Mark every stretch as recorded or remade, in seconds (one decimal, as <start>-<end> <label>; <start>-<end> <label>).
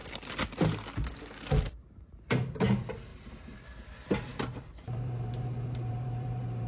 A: 0.0-1.7 recorded; 1.7-6.7 remade